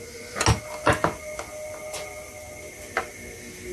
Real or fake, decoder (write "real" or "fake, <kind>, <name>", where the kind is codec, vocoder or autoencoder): real